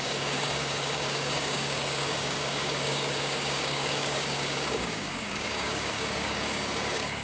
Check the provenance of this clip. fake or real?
fake